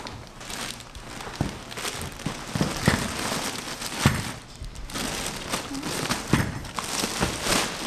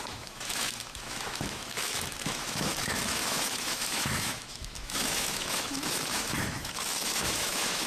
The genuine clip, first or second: first